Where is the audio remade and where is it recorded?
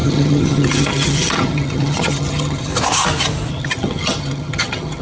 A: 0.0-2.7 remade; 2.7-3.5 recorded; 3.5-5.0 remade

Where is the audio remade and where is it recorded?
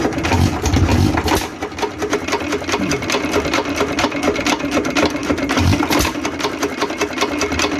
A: 0.0-7.8 recorded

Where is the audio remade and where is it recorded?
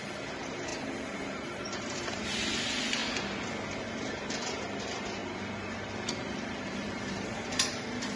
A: 0.0-3.0 remade; 3.0-3.8 recorded; 3.8-8.2 remade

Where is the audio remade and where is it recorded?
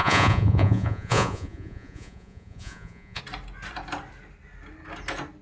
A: 0.0-3.2 remade; 3.2-5.4 recorded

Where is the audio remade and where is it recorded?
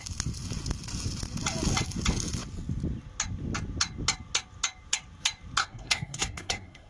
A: 0.0-5.6 recorded; 5.6-6.9 remade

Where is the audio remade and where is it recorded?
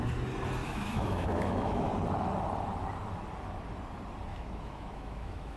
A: 0.0-0.6 recorded; 0.6-1.9 remade; 1.9-4.3 recorded; 4.3-5.6 remade